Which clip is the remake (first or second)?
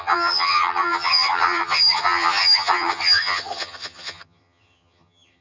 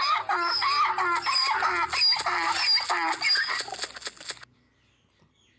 first